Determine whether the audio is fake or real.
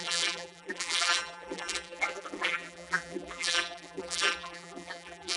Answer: fake